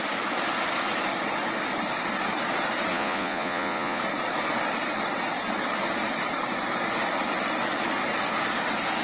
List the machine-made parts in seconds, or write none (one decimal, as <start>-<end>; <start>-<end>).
2.9-4.0